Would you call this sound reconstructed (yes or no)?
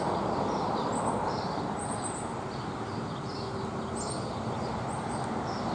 no